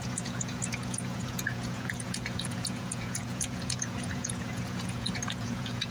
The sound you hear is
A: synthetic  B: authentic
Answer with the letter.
A